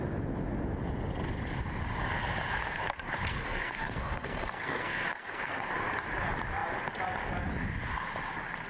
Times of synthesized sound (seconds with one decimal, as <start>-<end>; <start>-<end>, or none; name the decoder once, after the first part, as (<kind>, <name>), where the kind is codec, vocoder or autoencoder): 3.3-5.7 (codec, SNAC)